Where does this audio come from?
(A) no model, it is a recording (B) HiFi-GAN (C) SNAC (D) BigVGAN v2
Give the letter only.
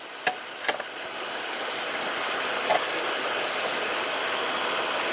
A